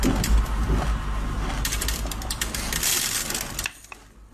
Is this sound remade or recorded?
recorded